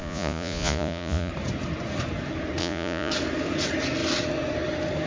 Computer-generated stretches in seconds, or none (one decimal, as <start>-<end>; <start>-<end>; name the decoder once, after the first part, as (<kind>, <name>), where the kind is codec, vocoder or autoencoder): 0.0-1.3 (vocoder, Vocos); 2.6-3.1